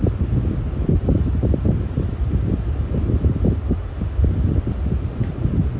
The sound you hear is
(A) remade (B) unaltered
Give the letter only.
A